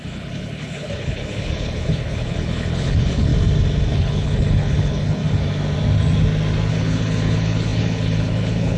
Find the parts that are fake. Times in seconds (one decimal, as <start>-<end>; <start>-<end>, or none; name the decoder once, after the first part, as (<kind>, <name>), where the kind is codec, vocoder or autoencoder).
0.0-3.3 (codec, HILCodec); 3.9-5.2; 6.7-8.8